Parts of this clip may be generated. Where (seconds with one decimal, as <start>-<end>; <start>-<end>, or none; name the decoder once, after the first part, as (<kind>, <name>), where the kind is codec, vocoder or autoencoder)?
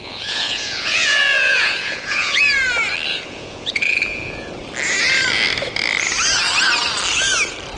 0.0-2.4 (vocoder, Vocos); 3.1-4.5